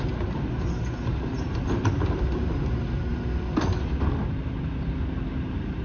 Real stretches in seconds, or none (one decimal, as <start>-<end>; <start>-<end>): 0.0-5.8